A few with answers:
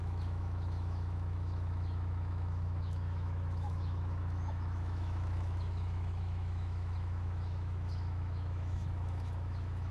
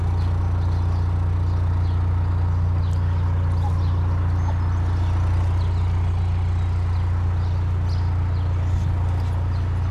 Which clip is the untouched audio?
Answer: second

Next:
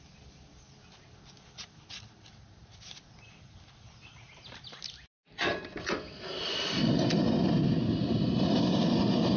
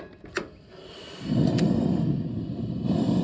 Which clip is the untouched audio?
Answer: first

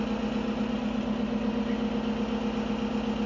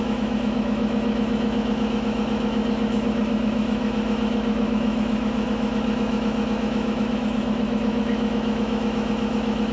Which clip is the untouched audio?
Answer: first